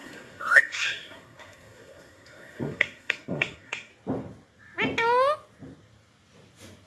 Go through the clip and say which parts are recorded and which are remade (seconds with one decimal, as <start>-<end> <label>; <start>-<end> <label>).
0.0-3.9 remade; 3.9-6.9 recorded